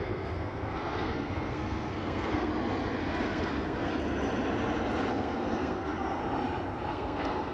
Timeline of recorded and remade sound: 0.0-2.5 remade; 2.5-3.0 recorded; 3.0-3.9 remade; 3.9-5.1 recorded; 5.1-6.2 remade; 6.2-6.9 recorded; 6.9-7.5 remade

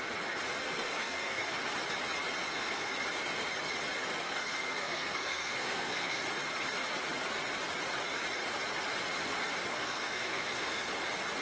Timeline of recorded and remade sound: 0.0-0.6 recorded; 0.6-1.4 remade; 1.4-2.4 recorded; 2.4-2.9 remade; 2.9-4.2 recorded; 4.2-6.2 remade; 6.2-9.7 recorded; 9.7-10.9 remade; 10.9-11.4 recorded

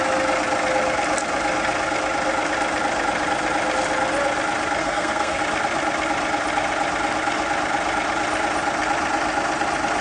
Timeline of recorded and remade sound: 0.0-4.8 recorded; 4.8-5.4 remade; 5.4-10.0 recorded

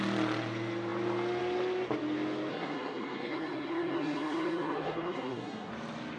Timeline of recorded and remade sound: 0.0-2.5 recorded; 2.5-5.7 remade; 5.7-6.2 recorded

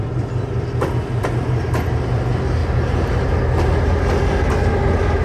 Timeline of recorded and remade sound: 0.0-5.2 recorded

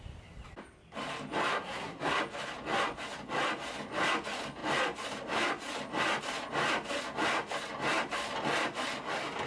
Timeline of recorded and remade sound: 0.0-1.5 recorded; 1.5-2.2 remade; 2.2-9.5 recorded